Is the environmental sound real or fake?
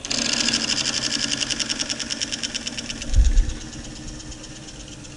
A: real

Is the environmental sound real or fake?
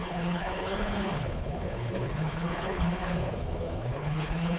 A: fake